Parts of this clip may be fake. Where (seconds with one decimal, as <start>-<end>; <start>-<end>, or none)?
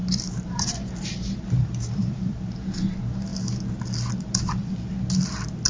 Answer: 0.0-2.3